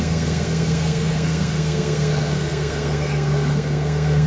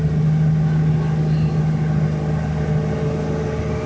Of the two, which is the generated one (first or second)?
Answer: first